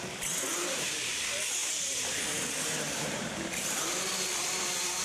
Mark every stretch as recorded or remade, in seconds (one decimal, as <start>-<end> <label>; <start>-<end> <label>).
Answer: 0.0-0.5 recorded; 0.5-1.2 remade; 1.2-1.6 recorded; 1.6-3.9 remade; 3.9-5.0 recorded